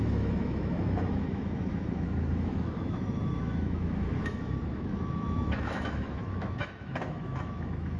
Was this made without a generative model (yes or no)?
no